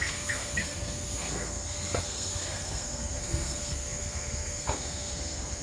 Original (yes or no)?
no